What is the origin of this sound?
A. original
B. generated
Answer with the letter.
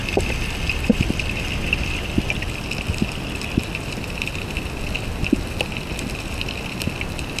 A